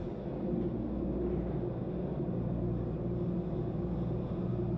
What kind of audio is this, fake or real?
real